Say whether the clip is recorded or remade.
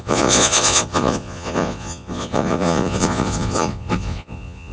remade